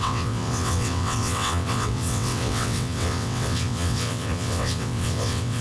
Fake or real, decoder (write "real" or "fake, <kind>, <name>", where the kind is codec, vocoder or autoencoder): fake, vocoder, WaveNeXt